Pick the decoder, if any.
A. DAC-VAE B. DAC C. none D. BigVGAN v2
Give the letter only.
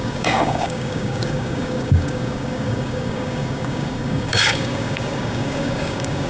B